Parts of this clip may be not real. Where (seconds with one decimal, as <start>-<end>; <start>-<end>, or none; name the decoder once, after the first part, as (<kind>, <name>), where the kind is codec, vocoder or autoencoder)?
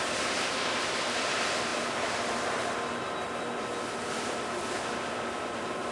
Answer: 0.0-1.7 (vocoder, BigVGAN v2); 4.1-5.9